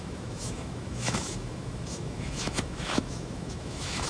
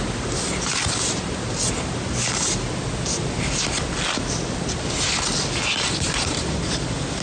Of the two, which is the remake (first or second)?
first